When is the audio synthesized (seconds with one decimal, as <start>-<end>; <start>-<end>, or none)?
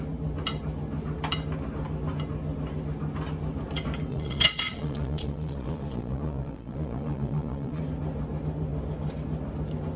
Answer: 4.1-7.8